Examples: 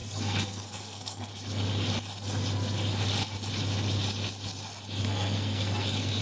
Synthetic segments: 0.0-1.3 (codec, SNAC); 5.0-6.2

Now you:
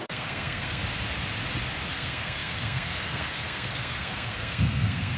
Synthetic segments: 0.0-0.8 (codec, SNAC); 1.9-5.2

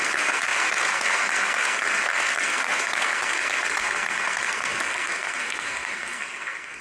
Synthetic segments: 0.0-6.8 (codec, SNAC)

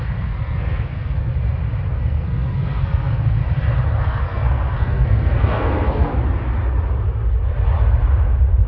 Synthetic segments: 0.0-1.3 (codec, SNAC); 1.9-3.4; 4.0-6.1

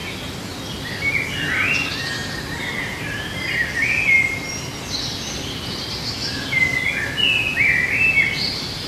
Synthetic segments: none